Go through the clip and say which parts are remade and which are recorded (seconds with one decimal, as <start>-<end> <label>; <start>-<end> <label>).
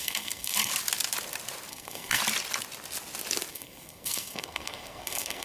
0.0-0.7 remade; 0.7-1.7 recorded; 1.7-2.2 remade; 2.2-3.5 recorded; 3.5-5.4 remade